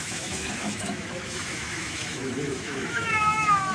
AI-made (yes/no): yes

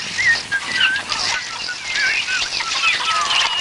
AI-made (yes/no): no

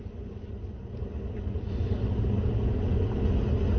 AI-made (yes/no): no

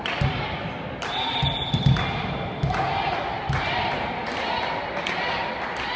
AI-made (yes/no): no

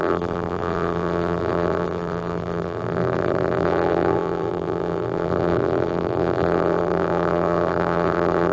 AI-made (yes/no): yes